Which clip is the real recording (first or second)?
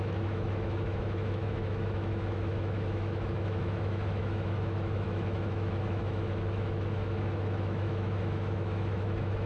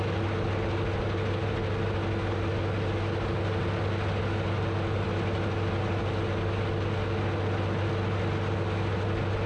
second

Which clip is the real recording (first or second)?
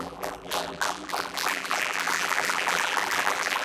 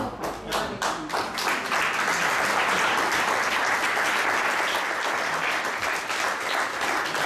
second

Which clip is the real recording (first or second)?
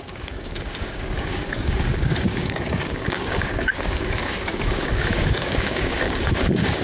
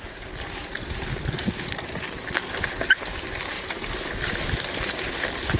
second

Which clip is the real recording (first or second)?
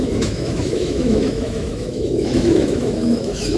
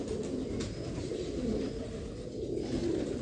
second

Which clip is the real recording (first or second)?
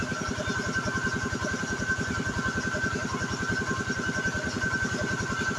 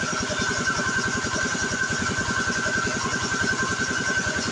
first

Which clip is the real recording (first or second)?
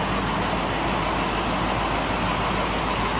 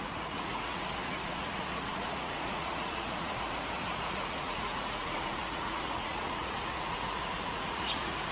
first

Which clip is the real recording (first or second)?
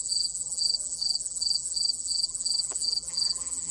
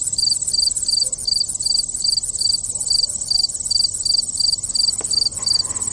second